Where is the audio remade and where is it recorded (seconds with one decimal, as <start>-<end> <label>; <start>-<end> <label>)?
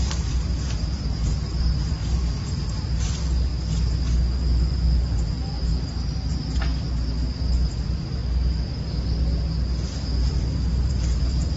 0.0-3.5 remade; 3.5-5.1 recorded; 5.1-5.7 remade; 5.7-7.7 recorded; 7.7-8.2 remade; 8.2-10.3 recorded; 10.3-11.6 remade